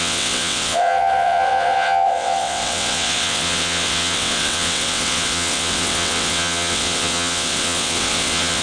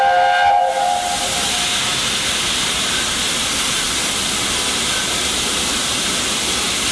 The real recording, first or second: second